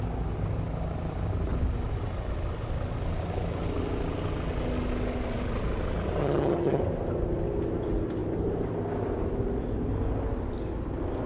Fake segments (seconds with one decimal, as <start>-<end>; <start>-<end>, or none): 6.2-6.8